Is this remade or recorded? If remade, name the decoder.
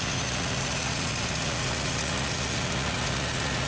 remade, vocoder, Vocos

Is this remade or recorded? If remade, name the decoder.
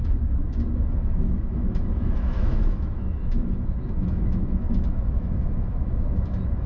remade, autoencoder, DAC-VAE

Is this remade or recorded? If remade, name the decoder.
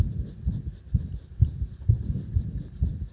recorded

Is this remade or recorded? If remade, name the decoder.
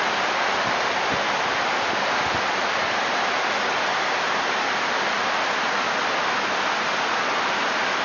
recorded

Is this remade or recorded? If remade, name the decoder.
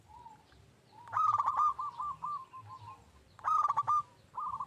recorded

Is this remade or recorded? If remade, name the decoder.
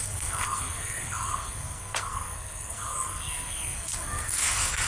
remade, codec, SNAC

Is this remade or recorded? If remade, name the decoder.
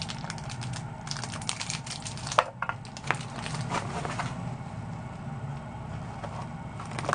recorded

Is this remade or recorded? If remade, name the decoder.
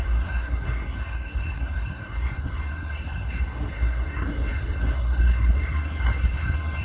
remade, codec, SNAC